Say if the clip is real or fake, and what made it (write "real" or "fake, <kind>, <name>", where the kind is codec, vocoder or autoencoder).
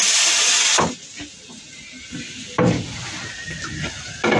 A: real